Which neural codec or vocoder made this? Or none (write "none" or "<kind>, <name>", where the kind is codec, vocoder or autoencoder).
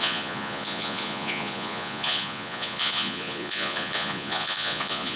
vocoder, Vocos